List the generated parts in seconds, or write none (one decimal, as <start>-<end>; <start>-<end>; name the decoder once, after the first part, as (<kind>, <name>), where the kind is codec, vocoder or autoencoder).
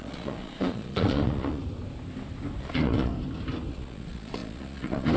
0.0-1.6 (vocoder, Vocos); 2.6-3.1; 3.7-5.2